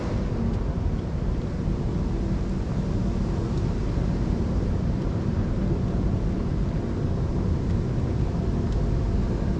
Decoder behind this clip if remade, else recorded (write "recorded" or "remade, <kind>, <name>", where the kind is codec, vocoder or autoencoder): recorded